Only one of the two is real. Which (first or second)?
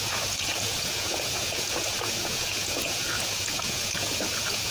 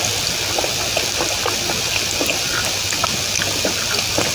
second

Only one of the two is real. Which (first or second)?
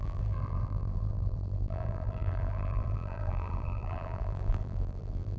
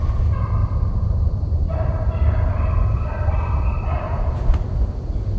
second